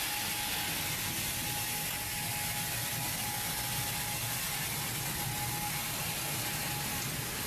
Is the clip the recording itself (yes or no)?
yes